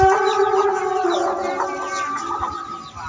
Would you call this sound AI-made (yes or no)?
no